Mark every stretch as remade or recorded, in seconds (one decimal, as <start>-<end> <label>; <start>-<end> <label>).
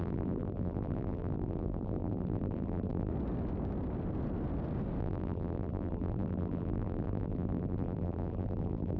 0.0-3.1 remade; 3.1-5.0 recorded; 5.0-9.0 remade